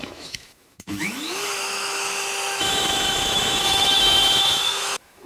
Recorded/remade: remade